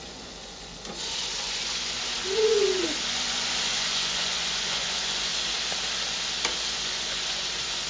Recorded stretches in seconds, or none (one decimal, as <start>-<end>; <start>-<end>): 5.3-6.7